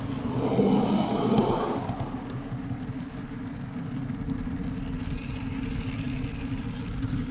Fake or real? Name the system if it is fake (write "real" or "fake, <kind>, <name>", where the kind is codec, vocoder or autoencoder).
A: real